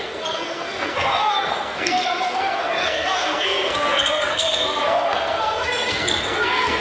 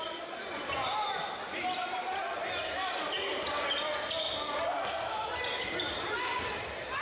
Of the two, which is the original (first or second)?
second